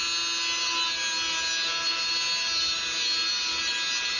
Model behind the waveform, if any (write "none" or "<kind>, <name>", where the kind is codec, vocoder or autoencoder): none